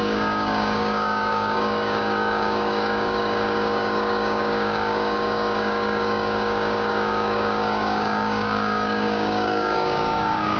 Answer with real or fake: fake